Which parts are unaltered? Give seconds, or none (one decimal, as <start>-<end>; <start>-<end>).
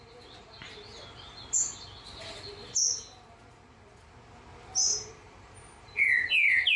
0.0-4.9; 6.3-6.8